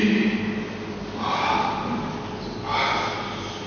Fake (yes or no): no